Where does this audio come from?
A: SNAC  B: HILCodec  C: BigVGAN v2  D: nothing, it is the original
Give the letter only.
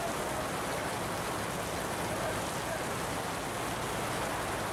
D